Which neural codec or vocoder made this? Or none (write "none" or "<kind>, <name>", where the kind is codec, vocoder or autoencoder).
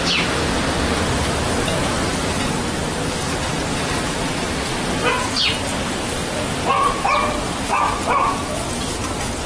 none